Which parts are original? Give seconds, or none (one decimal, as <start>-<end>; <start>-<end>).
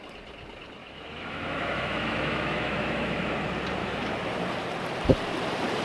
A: 0.0-0.8; 3.4-3.8; 4.3-5.8